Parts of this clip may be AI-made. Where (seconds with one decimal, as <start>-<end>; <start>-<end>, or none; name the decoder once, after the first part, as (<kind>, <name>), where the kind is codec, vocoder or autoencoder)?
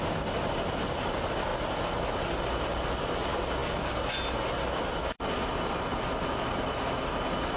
none